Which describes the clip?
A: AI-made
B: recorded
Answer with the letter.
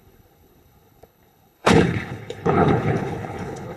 A